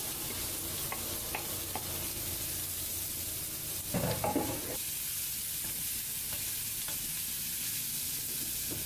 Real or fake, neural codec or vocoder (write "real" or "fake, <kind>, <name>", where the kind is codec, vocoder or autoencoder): real